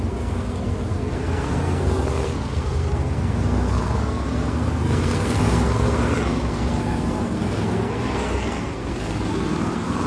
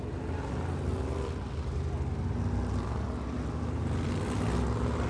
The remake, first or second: first